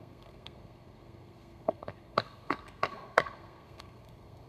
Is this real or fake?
fake